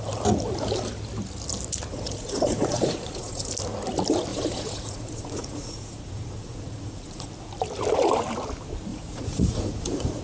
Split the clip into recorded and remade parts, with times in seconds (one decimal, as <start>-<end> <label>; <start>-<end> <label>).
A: 0.0-1.9 recorded; 1.9-3.5 remade; 3.5-4.3 recorded; 4.3-7.3 remade; 7.3-8.9 recorded; 8.9-10.2 remade